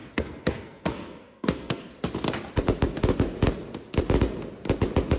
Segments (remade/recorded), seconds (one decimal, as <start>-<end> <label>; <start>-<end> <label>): 0.0-1.9 remade; 1.9-5.2 recorded